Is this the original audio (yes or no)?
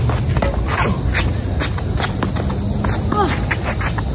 yes